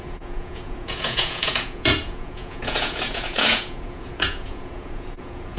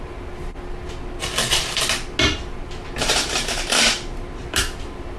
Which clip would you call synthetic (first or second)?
first